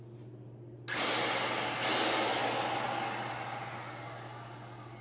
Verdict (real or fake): real